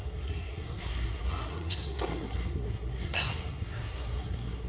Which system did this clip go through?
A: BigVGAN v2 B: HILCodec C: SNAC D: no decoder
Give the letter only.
C